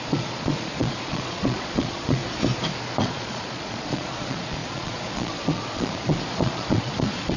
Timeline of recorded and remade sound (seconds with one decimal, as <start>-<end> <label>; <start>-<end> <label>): 0.0-2.2 remade; 2.2-3.0 recorded; 3.0-7.4 remade